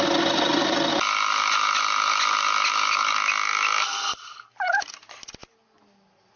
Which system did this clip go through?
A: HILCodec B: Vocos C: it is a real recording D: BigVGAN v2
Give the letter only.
C